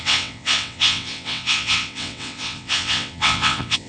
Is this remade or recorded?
remade